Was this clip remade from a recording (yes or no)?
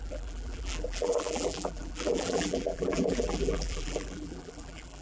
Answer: yes